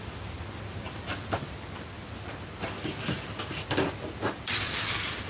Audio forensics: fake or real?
real